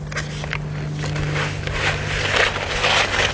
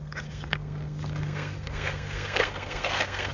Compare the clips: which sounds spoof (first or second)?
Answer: second